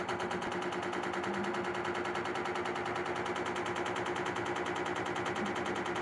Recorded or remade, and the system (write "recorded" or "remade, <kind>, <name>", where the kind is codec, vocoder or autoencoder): recorded